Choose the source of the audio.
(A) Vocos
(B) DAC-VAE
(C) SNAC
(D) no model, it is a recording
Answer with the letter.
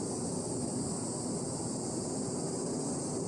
D